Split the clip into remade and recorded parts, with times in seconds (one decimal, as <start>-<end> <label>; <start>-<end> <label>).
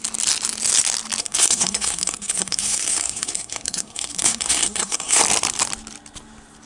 0.0-1.2 recorded; 1.2-5.2 remade; 5.2-6.7 recorded